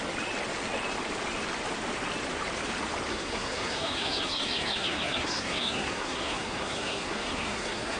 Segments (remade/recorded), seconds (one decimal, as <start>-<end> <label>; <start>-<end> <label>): 0.0-3.1 recorded; 3.1-8.0 remade

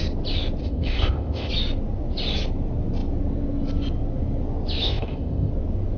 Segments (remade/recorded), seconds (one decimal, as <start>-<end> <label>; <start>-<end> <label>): 0.0-0.6 recorded; 0.6-1.5 remade; 1.5-4.8 recorded; 4.8-5.5 remade; 5.5-6.0 recorded

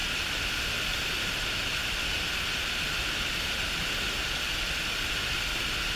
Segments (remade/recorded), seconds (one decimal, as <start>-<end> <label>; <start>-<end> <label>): 0.0-6.0 recorded

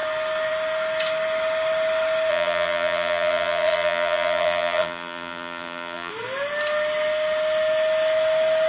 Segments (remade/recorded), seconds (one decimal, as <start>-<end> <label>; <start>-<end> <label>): 0.0-2.3 recorded; 2.3-6.1 remade; 6.1-8.7 recorded

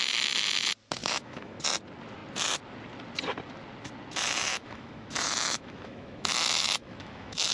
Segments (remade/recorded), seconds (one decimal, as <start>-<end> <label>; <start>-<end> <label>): 0.0-1.0 recorded; 1.0-1.6 remade; 1.6-4.5 recorded; 4.5-7.5 remade

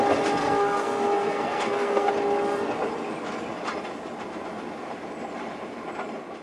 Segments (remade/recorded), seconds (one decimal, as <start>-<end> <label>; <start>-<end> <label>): 0.0-0.4 recorded; 0.4-2.1 remade; 2.1-6.4 recorded

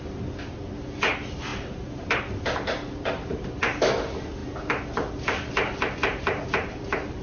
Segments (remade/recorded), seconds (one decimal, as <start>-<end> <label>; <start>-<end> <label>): 0.0-7.2 recorded